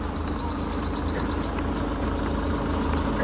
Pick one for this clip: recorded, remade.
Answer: recorded